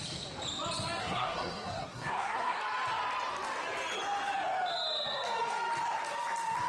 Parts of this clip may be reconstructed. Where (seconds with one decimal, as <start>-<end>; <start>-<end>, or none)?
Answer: 1.0-2.6